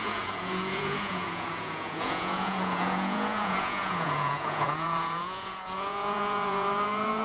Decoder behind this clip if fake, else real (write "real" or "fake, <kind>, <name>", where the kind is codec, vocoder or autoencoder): fake, vocoder, Vocos